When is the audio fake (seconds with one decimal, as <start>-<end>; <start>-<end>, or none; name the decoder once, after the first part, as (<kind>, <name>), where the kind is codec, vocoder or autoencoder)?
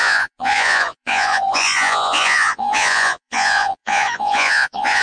0.0-5.0 (vocoder, Vocos)